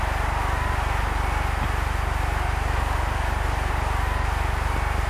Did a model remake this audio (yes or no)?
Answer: no